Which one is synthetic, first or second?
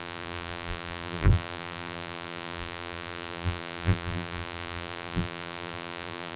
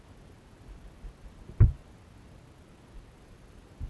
first